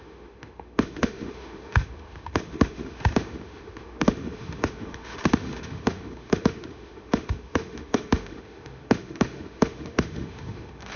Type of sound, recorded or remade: remade